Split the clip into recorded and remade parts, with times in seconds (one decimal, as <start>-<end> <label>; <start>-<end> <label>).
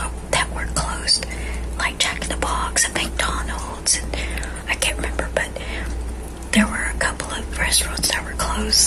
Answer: 0.0-6.5 recorded; 6.5-8.4 remade; 8.4-8.9 recorded